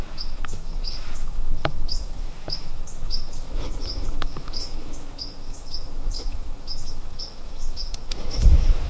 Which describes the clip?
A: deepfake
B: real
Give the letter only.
A